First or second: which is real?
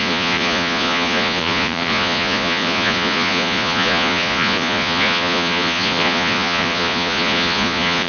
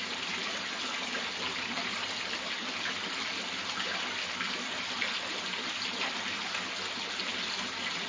second